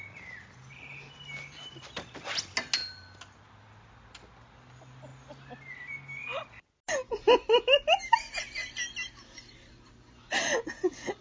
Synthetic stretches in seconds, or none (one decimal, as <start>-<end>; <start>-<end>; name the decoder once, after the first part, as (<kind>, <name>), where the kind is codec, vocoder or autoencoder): none